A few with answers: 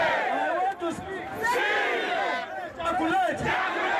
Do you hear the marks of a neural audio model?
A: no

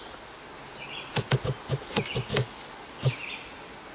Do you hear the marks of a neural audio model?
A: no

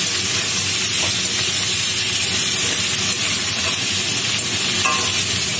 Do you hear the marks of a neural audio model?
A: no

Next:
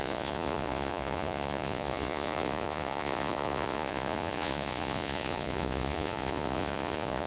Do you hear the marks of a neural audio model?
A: yes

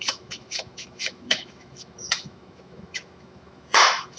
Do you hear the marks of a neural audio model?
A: yes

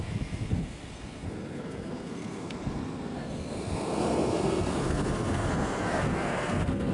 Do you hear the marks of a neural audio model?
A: yes